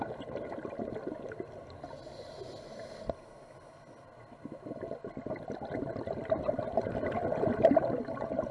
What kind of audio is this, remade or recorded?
recorded